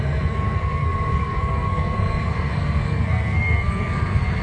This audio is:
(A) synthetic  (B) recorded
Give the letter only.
A